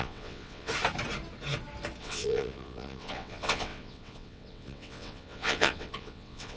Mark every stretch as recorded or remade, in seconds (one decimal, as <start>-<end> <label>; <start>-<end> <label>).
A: 0.0-0.7 remade; 0.7-2.0 recorded; 2.0-6.6 remade